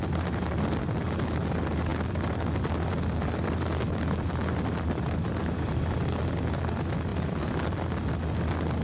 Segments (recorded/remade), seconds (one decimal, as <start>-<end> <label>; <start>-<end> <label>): 0.0-0.6 remade; 0.6-1.9 recorded; 1.9-5.8 remade; 5.8-7.1 recorded; 7.1-8.1 remade; 8.1-8.8 recorded